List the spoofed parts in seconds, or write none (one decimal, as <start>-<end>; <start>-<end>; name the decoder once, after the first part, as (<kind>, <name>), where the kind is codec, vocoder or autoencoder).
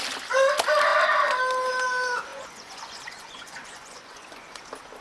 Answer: 2.3-4.6 (vocoder, Vocos)